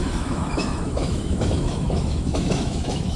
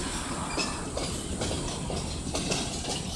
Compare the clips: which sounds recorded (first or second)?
second